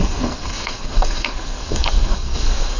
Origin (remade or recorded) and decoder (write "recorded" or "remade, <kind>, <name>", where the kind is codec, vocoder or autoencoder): remade, codec, SNAC